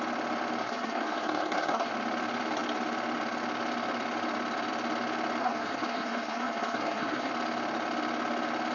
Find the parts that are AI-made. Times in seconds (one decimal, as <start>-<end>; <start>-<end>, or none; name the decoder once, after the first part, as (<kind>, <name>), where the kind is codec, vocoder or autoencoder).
0.6-1.9 (codec, SNAC); 5.4-7.3